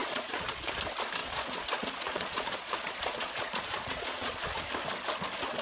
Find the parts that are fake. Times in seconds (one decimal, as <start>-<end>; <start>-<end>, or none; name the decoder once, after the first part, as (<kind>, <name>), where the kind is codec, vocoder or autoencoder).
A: 0.0-0.7 (vocoder, Vocos); 1.2-4.6